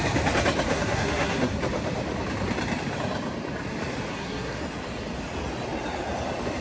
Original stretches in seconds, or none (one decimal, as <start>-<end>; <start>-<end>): 0.0-0.7; 1.6-4.1; 4.6-6.6